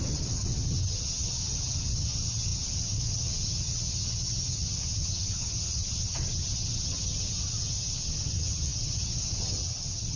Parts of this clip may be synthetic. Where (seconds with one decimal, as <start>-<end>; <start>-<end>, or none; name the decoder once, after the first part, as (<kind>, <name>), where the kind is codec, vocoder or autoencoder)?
0.0-10.2 (vocoder, HiFi-GAN)